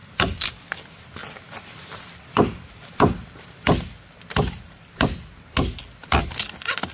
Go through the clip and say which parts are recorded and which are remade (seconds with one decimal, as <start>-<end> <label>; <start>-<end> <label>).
0.0-0.6 remade; 0.6-1.2 recorded; 1.2-5.3 remade; 5.3-6.9 recorded

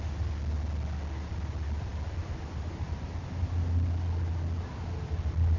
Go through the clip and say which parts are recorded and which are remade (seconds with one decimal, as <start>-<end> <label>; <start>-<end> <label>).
0.0-5.6 recorded

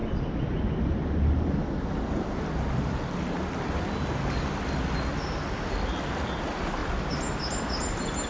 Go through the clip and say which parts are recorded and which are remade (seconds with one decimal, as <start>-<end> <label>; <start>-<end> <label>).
0.0-6.8 recorded; 6.8-7.4 remade; 7.4-8.3 recorded

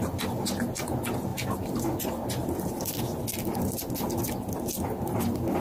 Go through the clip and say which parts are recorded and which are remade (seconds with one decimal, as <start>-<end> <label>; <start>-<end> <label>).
0.0-5.6 recorded

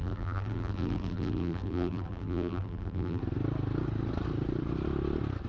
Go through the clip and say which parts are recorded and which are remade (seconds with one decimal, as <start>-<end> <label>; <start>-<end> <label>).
0.0-3.2 remade; 3.2-5.5 recorded